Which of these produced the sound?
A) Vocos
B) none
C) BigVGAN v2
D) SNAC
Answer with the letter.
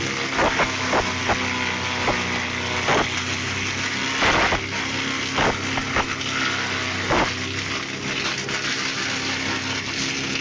B